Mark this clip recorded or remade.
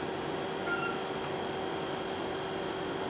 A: recorded